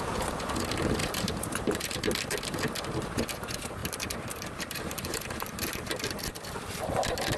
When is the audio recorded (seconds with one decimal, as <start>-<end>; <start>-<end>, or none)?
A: 0.0-1.0; 2.0-3.8; 6.0-7.4